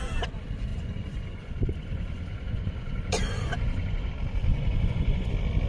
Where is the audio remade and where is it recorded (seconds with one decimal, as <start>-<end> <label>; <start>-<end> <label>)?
0.0-0.7 recorded; 0.7-4.1 remade; 4.1-4.5 recorded; 4.5-5.3 remade; 5.3-5.7 recorded